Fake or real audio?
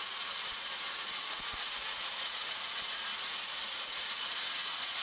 fake